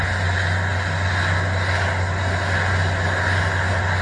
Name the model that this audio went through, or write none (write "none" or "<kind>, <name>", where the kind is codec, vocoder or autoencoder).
none